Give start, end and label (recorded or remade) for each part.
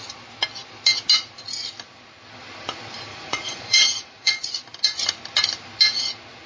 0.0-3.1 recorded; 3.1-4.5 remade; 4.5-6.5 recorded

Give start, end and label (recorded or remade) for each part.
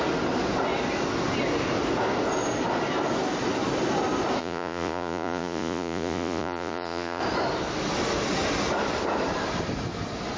0.0-4.4 recorded; 4.4-7.2 remade; 7.2-10.4 recorded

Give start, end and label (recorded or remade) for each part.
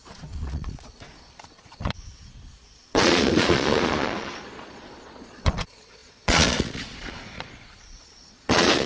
0.0-8.9 remade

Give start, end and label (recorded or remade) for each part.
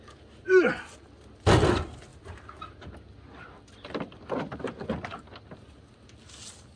0.0-6.8 recorded